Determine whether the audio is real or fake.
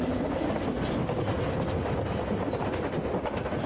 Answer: real